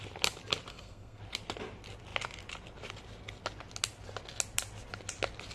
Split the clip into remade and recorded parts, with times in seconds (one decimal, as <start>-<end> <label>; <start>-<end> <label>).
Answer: 0.0-0.7 recorded; 0.7-1.2 remade; 1.2-5.5 recorded